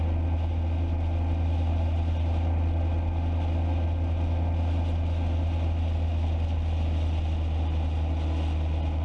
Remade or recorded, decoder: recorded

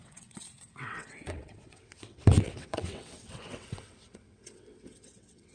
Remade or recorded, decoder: remade, vocoder, WaveNeXt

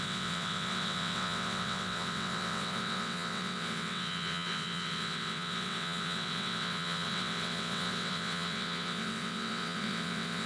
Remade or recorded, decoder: remade, vocoder, WaveNeXt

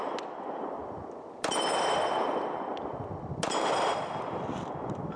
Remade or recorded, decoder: recorded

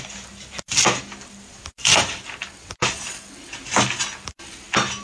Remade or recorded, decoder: recorded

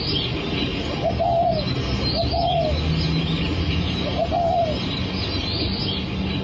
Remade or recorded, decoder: recorded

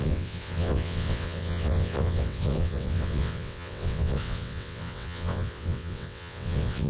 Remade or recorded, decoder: remade, vocoder, WaveNeXt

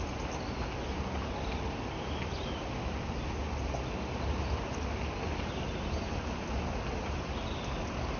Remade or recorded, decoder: recorded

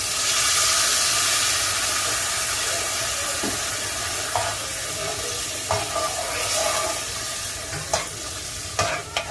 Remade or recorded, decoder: recorded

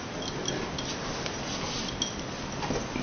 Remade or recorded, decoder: recorded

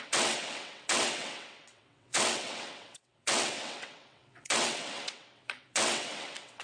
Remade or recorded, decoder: remade, vocoder, WaveNeXt